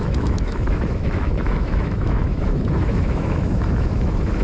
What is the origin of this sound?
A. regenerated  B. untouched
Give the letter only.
A